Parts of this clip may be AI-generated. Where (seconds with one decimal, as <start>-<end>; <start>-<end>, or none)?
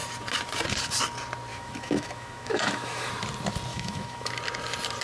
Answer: 1.5-3.1; 3.7-4.3